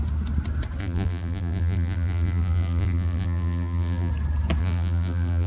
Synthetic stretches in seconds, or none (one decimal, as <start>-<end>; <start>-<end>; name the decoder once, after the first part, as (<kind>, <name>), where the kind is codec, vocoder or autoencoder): 0.8-4.1 (vocoder, BigVGAN v2); 4.6-5.5